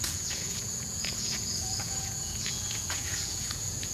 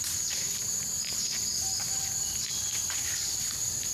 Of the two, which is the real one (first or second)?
second